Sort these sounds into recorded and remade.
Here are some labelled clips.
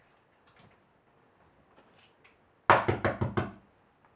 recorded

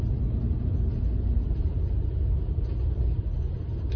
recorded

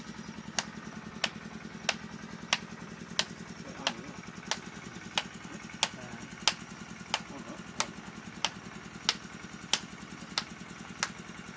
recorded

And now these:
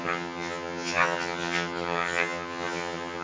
remade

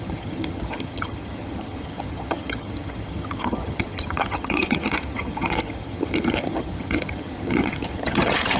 remade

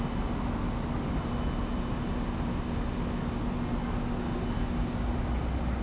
recorded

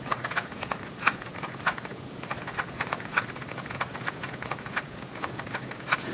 remade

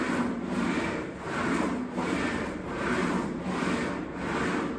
recorded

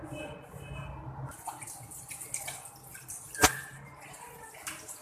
recorded